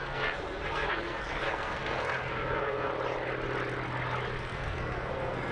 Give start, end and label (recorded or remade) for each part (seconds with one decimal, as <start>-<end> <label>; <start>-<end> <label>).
0.0-2.9 remade; 2.9-4.4 recorded; 4.4-5.5 remade